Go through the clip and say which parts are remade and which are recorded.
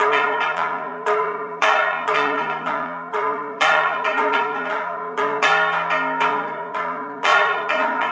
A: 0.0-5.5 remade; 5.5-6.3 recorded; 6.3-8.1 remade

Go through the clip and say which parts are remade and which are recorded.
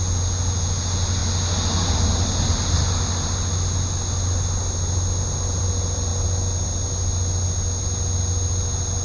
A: 0.0-9.0 recorded